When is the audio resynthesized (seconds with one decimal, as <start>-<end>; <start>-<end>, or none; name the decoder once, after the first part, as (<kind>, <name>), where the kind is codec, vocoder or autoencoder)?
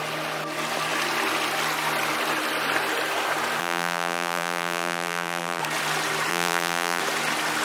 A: 3.6-5.6 (vocoder, BigVGAN v2); 6.3-7.0